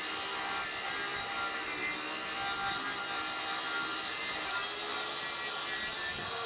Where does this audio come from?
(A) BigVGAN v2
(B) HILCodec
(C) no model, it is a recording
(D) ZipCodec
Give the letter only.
C